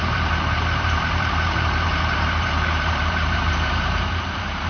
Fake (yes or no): yes